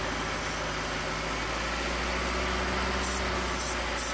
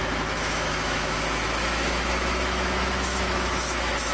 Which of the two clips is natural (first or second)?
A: first